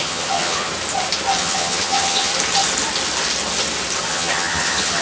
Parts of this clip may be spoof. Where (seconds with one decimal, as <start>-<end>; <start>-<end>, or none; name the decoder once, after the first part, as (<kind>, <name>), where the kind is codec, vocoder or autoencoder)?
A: 0.0-0.7 (vocoder, HiFi-GAN); 1.4-2.3; 4.1-5.0